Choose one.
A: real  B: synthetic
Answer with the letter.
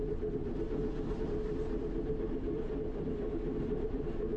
A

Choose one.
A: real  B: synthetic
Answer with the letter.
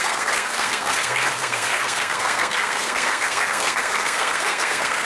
B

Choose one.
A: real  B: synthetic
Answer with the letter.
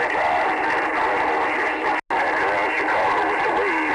A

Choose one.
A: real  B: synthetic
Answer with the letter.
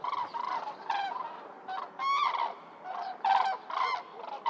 A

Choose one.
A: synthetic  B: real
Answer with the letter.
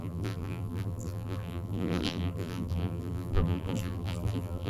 A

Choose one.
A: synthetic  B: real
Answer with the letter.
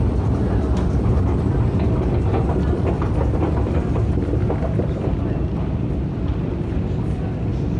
B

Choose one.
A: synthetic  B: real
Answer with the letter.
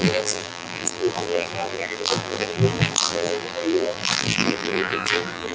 A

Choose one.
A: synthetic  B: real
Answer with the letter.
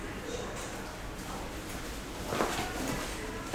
B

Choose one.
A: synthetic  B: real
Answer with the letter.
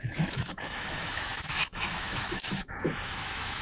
A